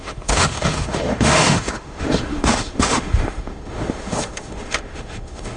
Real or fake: fake